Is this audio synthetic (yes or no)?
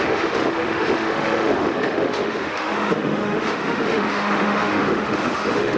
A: yes